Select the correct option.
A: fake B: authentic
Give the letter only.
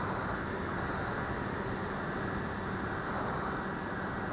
B